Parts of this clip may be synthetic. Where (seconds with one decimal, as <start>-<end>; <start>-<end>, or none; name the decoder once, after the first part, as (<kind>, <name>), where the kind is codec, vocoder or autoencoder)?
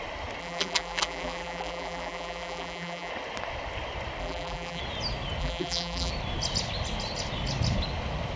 0.4-3.1 (vocoder, BigVGAN v2); 4.2-4.8; 5.4-6.1